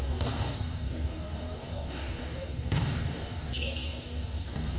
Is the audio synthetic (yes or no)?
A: yes